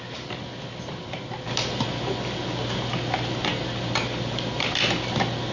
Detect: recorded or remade recorded